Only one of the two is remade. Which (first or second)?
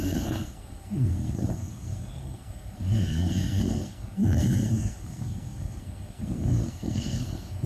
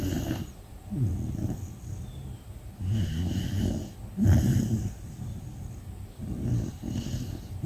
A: first